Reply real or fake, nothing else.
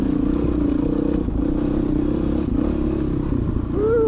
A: real